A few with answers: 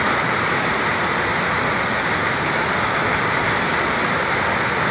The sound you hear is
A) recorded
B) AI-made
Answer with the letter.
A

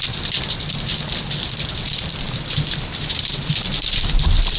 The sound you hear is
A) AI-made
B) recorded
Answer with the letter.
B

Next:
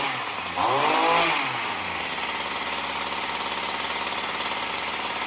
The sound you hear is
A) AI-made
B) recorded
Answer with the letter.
B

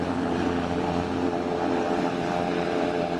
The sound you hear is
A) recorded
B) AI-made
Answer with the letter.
B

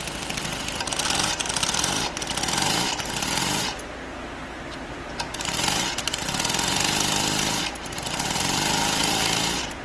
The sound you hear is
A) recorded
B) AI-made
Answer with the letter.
A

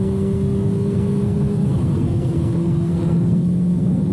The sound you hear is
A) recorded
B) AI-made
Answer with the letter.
B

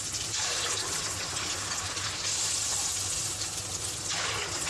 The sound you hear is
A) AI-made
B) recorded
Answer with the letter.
B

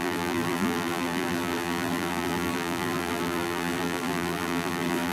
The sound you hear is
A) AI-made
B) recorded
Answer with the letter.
A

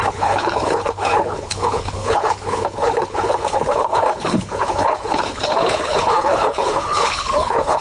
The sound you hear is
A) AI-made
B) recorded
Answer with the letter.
A